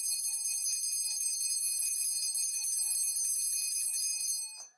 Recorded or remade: recorded